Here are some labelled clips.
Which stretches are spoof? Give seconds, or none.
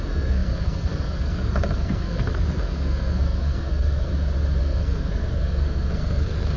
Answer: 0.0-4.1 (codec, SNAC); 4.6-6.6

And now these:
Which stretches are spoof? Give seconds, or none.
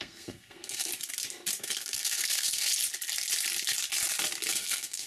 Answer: 0.0-0.9 (codec, SNAC); 1.6-2.7; 4.5-5.1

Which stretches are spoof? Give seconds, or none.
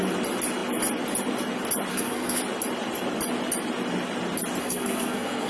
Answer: 1.9-2.4 (codec, SNAC); 4.6-5.5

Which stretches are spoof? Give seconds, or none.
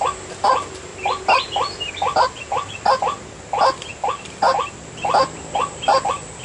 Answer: none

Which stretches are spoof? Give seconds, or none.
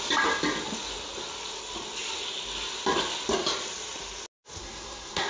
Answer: 4.6-5.3 (codec, SNAC)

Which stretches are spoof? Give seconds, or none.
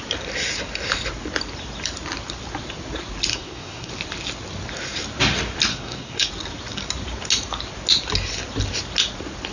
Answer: 3.3-3.9 (codec, SNAC); 5.7-6.3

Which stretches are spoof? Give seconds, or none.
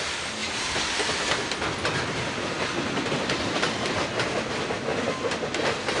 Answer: none